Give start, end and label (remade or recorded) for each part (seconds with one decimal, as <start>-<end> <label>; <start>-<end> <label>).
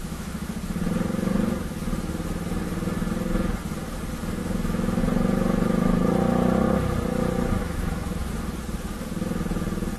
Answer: 0.0-0.5 remade; 0.5-4.4 recorded; 4.4-5.0 remade; 5.0-7.6 recorded; 7.6-8.3 remade; 8.3-10.0 recorded